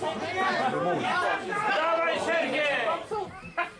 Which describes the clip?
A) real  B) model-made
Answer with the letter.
A